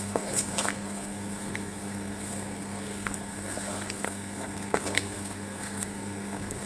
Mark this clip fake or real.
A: fake